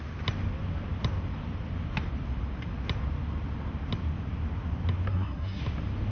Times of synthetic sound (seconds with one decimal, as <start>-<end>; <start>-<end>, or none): 5.1-5.6